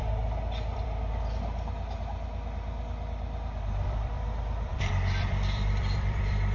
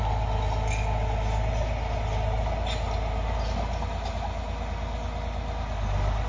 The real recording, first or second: second